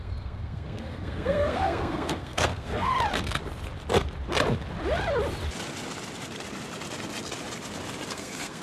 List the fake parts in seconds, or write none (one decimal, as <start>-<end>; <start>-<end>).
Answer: 0.0-2.9; 8.1-8.6